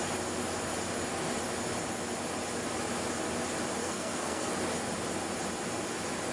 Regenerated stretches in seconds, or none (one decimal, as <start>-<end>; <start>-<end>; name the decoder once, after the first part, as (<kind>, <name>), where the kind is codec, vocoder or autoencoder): 3.8-4.5 (codec, SNAC)